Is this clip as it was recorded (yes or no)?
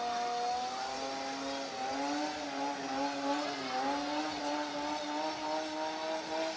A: yes